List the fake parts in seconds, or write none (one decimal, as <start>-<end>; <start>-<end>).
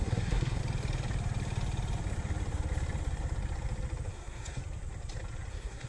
0.0-0.6; 4.1-4.6; 5.5-5.9